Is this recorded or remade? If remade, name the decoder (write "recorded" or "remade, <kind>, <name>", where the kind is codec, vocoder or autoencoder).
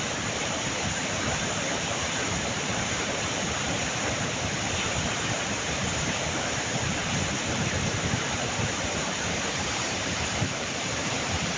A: remade, vocoder, BigVGAN v2